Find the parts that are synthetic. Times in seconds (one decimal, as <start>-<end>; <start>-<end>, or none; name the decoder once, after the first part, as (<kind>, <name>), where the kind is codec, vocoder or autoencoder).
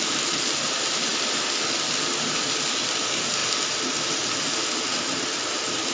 none